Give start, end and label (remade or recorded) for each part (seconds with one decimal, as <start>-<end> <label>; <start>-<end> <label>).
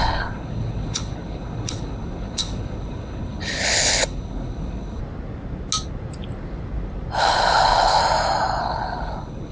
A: 0.0-5.0 remade; 5.0-7.2 recorded; 7.2-8.0 remade; 8.0-8.6 recorded; 8.6-9.5 remade